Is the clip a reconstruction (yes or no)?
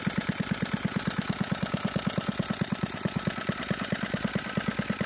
no